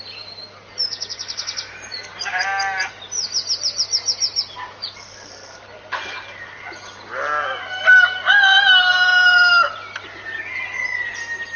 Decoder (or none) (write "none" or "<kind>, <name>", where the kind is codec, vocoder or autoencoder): none